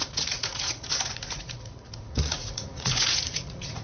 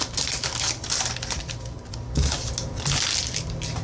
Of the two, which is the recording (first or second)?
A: second